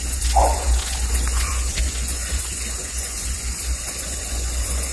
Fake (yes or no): yes